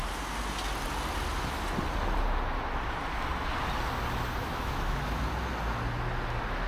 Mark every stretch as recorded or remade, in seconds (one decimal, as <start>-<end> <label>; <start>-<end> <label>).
0.0-4.4 recorded; 4.4-5.0 remade; 5.0-6.7 recorded